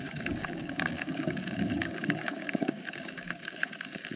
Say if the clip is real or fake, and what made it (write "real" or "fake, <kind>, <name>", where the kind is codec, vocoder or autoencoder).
fake, codec, DAC